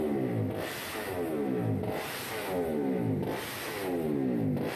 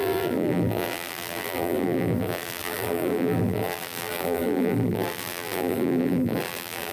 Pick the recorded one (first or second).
first